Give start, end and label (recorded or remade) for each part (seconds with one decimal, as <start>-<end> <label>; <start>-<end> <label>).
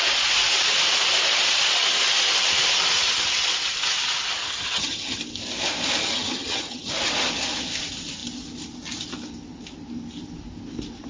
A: 0.0-4.4 recorded; 4.4-5.2 remade; 5.2-6.0 recorded; 6.0-6.9 remade; 6.9-11.1 recorded